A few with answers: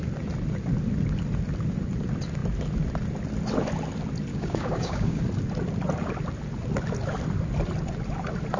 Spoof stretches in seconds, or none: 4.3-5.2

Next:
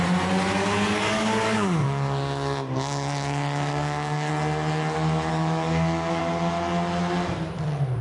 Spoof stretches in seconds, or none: 0.6-4.3; 5.3-6.2

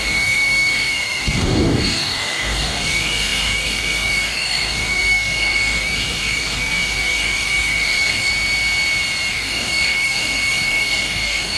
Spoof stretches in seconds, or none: 0.0-8.3; 9.3-11.6

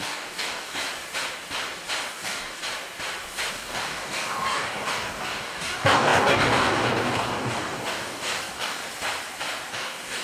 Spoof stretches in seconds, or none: 0.0-0.8; 2.1-2.6; 3.5-8.8; 9.7-10.2

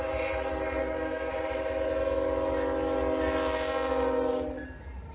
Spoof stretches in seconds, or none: 0.8-1.3

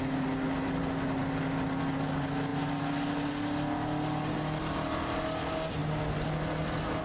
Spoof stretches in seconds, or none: none